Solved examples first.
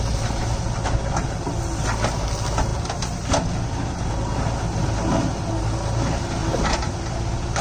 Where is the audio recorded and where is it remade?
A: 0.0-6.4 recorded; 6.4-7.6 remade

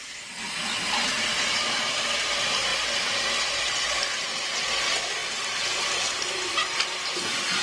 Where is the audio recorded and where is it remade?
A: 0.0-7.6 recorded

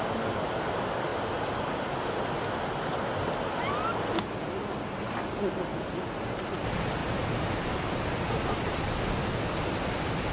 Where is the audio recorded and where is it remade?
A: 0.0-5.7 recorded; 5.7-6.5 remade; 6.5-7.0 recorded; 7.0-8.8 remade; 8.8-10.3 recorded

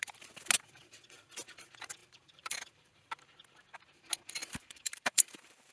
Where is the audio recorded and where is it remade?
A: 0.0-2.0 recorded; 2.0-3.1 remade; 3.1-4.4 recorded; 4.4-5.7 remade

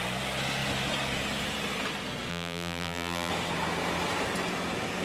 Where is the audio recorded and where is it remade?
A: 0.0-2.3 recorded; 2.3-3.3 remade; 3.3-5.0 recorded

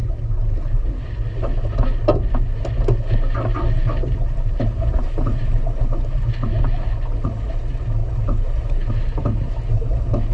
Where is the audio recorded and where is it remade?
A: 0.0-3.8 recorded; 3.8-5.8 remade; 5.8-10.3 recorded

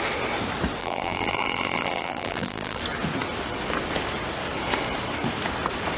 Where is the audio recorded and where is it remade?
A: 0.0-0.8 recorded; 0.8-2.8 remade; 2.8-6.0 recorded

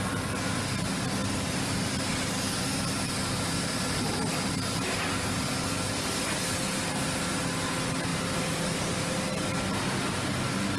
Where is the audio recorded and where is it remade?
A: 0.0-10.8 recorded